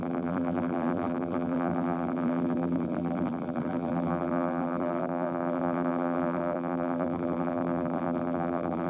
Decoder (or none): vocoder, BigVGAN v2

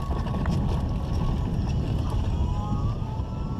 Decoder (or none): none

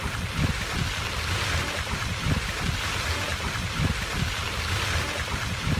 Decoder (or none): none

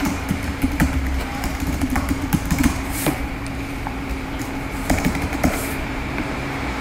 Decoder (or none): vocoder, BigVGAN v2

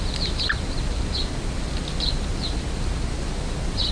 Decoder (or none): vocoder, BigVGAN v2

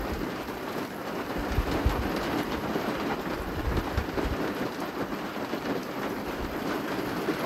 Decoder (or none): vocoder, BigVGAN v2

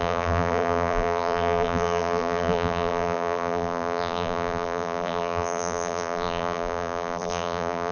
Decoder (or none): vocoder, BigVGAN v2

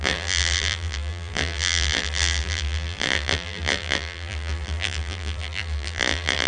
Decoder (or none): vocoder, BigVGAN v2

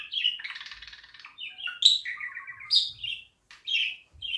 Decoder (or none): none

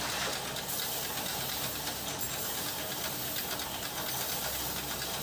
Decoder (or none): none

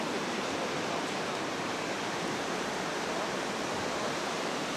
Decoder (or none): vocoder, BigVGAN v2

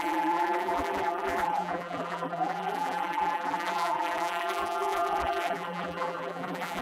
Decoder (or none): vocoder, BigVGAN v2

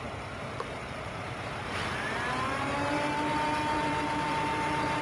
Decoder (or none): vocoder, BigVGAN v2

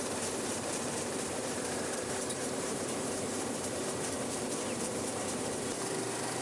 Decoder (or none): vocoder, BigVGAN v2